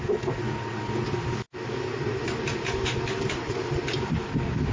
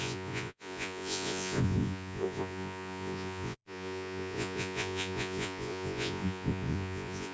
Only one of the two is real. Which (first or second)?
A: first